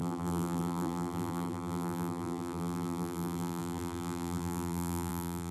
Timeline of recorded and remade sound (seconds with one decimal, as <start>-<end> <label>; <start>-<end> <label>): 0.0-5.5 remade